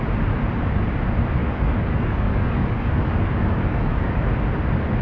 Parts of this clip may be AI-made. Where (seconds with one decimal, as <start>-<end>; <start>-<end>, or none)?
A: 1.4-4.3